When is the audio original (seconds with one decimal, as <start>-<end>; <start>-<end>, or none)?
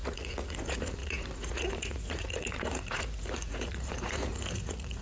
none